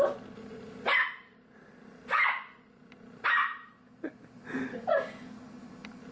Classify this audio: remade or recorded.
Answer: recorded